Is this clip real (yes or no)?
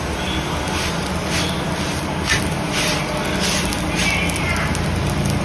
yes